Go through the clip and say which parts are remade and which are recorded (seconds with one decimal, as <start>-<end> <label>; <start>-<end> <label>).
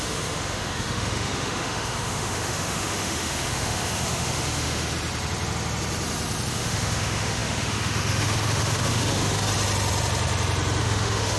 0.0-4.9 remade; 4.9-6.5 recorded; 6.5-9.5 remade; 9.5-10.8 recorded; 10.8-11.4 remade